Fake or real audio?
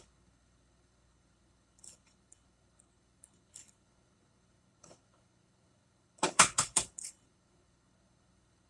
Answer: fake